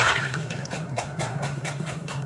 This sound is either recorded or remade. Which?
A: remade